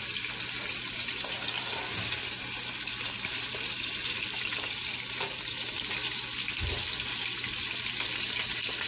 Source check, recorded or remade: recorded